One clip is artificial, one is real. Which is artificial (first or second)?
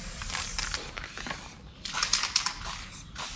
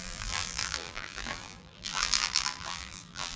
second